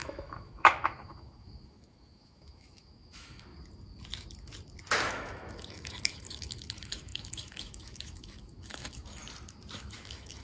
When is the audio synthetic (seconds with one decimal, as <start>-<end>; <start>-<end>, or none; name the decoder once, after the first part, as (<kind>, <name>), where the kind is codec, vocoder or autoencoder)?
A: 0.0-3.5 (autoencoder, DAC-VAE); 5.1-9.2; 9.7-10.4